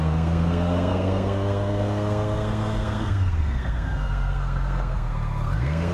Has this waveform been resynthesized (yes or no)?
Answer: yes